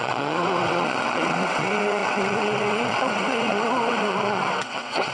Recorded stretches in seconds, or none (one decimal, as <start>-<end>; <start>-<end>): none